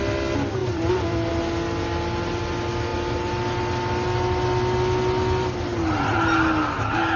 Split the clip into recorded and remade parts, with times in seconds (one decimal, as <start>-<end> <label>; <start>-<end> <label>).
0.0-0.6 recorded; 0.6-1.3 remade; 1.3-7.2 recorded